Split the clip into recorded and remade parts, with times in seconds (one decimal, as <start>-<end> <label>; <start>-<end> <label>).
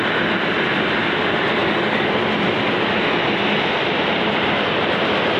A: 0.0-1.6 recorded; 1.6-2.1 remade; 2.1-5.4 recorded